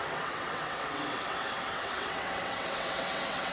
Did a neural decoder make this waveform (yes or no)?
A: yes